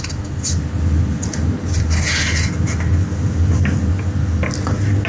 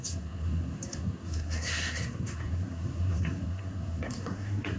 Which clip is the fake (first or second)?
second